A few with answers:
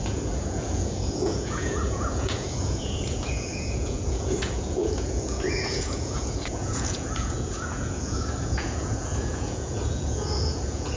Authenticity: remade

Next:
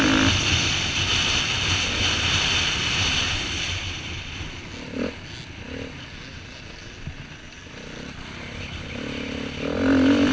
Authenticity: recorded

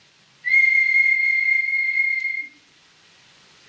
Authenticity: remade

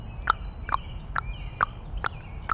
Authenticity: recorded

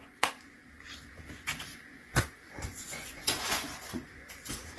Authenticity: remade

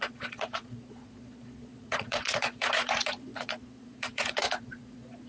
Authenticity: remade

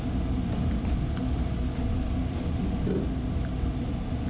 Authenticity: recorded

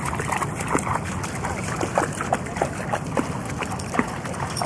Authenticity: recorded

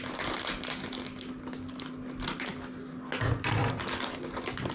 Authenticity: recorded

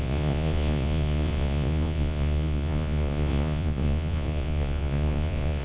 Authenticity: remade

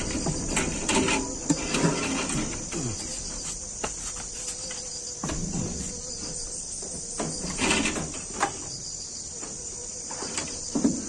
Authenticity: recorded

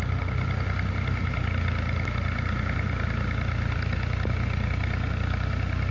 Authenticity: recorded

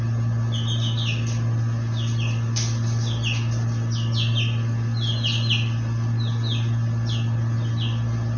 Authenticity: recorded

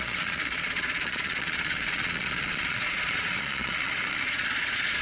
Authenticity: remade